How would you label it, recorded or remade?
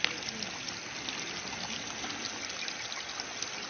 recorded